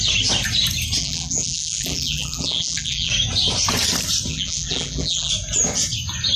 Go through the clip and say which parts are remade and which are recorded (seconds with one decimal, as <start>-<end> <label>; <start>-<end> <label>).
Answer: 0.0-1.0 recorded; 1.0-3.1 remade; 3.1-4.3 recorded; 4.3-5.3 remade; 5.3-6.4 recorded